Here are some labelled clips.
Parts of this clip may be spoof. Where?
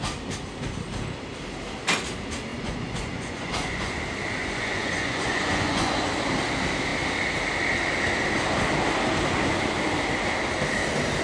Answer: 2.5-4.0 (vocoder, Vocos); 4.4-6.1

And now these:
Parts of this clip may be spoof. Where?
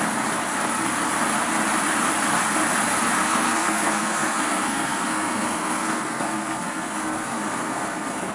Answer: 3.2-8.3 (codec, SNAC)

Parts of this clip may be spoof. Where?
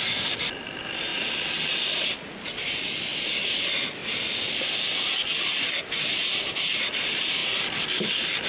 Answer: none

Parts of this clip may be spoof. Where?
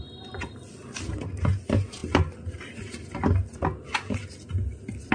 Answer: none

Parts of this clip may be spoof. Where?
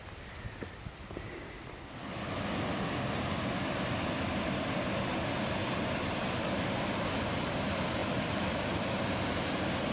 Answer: none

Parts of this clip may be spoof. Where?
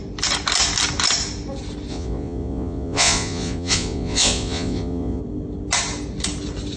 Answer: 1.9-5.2 (vocoder, Vocos)